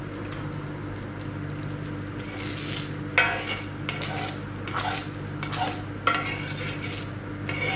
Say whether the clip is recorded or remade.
recorded